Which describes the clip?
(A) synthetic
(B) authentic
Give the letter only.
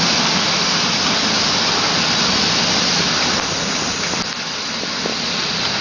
B